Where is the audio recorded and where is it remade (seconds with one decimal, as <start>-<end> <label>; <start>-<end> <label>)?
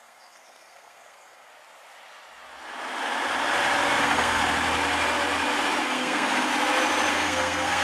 0.0-1.5 remade; 1.5-4.0 recorded; 4.0-4.4 remade; 4.4-5.8 recorded; 5.8-6.5 remade; 6.5-7.1 recorded; 7.1-7.8 remade